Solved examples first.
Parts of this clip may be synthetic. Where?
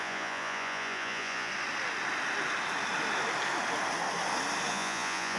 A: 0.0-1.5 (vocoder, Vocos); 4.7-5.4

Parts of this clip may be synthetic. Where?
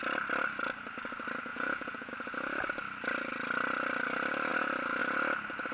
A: 1.5-2.1 (vocoder, Vocos)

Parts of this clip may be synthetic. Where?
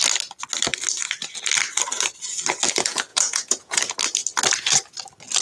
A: 3.1-3.8 (vocoder, Vocos)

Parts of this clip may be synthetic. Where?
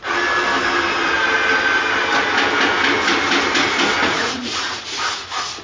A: 4.0-5.6 (vocoder, Vocos)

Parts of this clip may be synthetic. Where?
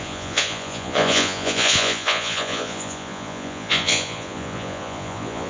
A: 0.0-5.5 (vocoder, Vocos)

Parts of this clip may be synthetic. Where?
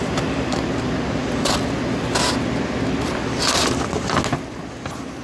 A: none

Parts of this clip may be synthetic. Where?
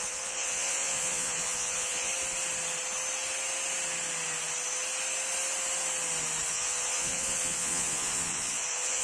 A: 0.0-2.1 (vocoder, Vocos); 6.5-9.0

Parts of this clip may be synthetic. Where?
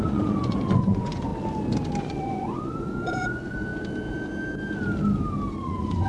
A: 0.0-1.3 (vocoder, Vocos); 2.0-3.7; 5.5-6.1